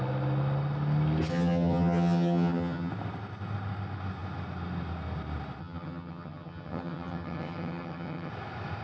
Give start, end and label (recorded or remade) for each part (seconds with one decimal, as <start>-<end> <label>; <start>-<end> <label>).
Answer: 0.0-1.3 recorded; 1.3-2.9 remade; 2.9-5.6 recorded; 5.6-8.3 remade; 8.3-8.8 recorded